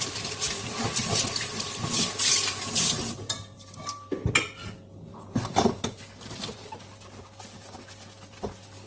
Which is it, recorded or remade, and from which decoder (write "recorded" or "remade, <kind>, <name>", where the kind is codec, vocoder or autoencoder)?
recorded